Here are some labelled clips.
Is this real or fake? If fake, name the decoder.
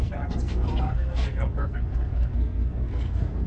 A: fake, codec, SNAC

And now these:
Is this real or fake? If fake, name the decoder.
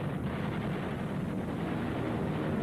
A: real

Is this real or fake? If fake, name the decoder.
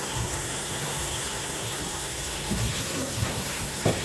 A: fake, codec, SNAC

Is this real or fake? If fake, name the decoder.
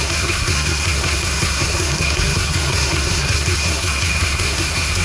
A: fake, codec, SNAC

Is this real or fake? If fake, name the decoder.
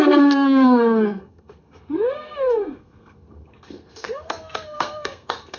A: fake, codec, SNAC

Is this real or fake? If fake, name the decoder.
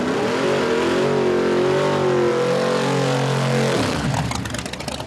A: real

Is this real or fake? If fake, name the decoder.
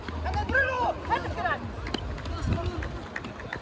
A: real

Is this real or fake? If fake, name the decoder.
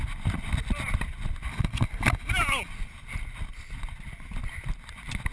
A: real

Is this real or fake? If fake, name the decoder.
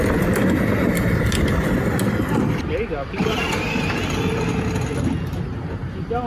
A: real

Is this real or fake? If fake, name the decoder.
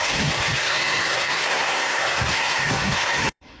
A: fake, codec, SNAC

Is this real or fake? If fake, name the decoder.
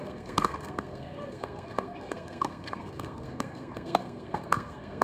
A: fake, codec, SNAC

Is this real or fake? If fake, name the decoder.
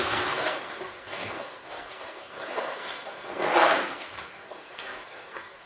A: fake, codec, SNAC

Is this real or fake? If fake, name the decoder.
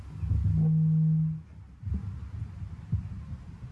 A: real